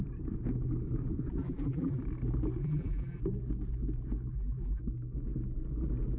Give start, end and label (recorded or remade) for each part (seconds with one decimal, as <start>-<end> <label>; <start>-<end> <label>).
0.0-1.4 recorded; 1.4-2.0 remade; 2.0-2.6 recorded; 2.6-3.2 remade; 3.2-4.3 recorded; 4.3-4.8 remade; 4.8-6.2 recorded